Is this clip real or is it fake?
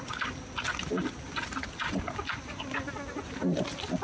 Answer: real